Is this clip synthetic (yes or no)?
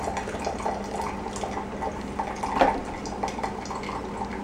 no